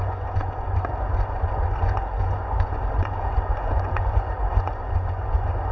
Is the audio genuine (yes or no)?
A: no